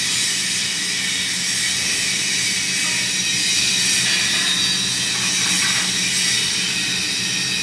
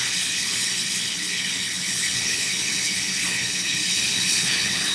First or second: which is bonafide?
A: first